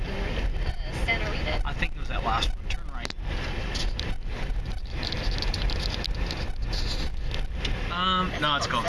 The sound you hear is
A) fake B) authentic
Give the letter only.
B